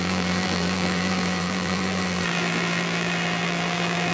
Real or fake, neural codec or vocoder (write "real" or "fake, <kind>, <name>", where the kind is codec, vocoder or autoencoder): fake, vocoder, BigVGAN v2